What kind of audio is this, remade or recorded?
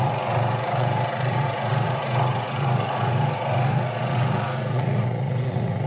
remade